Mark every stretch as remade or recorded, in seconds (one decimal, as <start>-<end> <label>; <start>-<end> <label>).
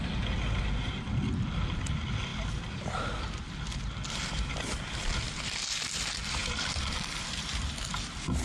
0.0-6.4 recorded; 6.4-7.2 remade; 7.2-8.4 recorded